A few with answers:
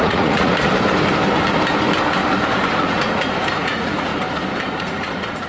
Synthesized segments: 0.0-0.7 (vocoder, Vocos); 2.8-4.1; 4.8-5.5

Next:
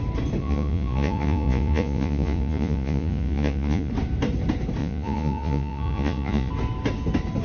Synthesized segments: 0.4-3.9 (vocoder, Vocos); 4.8-6.5

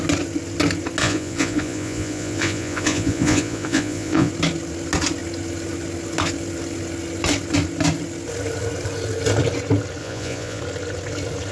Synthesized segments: 1.0-4.3 (vocoder, Vocos); 10.0-10.6

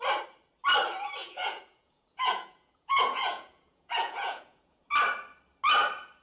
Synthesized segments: 1.2-4.9 (vocoder, Vocos)

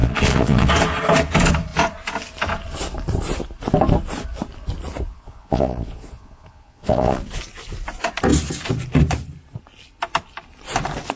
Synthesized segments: 0.0-0.7 (vocoder, Vocos); 5.1-7.4